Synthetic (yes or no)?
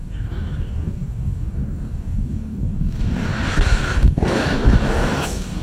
yes